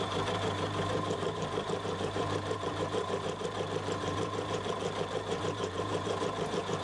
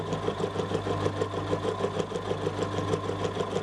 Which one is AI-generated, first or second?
first